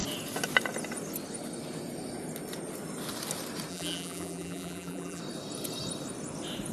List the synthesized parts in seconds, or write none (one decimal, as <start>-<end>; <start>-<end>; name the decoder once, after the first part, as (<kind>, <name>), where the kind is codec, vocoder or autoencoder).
3.7-5.2 (vocoder, BigVGAN v2)